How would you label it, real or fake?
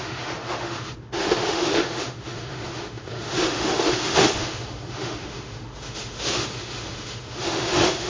fake